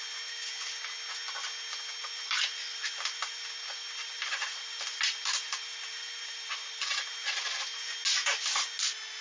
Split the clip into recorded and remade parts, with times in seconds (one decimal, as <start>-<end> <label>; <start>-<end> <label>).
0.0-2.0 recorded; 2.0-7.1 remade; 7.1-9.2 recorded